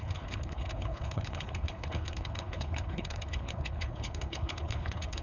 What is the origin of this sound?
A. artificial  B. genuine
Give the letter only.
A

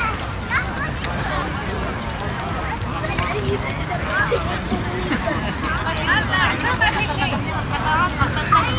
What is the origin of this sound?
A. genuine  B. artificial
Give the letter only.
A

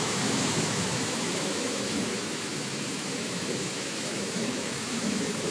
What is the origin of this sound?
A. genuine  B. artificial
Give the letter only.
B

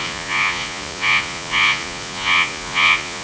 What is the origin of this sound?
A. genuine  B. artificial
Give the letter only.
B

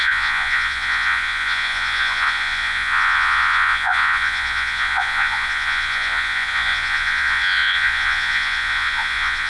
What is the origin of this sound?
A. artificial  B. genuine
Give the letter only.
A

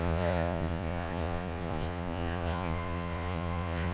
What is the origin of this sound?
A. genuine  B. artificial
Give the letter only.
B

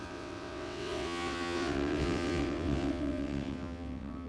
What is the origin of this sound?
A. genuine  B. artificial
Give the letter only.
B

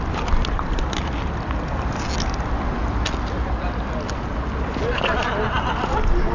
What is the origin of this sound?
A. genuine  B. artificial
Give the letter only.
A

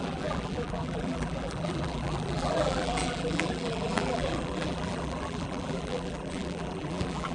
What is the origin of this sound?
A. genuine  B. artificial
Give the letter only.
B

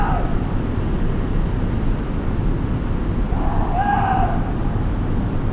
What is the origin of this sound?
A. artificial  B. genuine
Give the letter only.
B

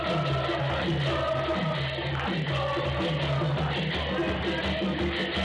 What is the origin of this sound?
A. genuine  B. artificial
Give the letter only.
A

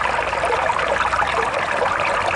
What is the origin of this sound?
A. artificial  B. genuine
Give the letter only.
B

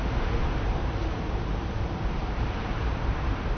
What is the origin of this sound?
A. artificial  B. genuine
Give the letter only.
A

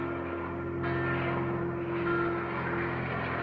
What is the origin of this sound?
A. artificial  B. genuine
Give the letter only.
B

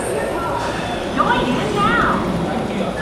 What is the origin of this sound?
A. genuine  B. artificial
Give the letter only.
A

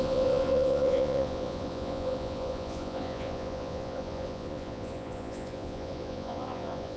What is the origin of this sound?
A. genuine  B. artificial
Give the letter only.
B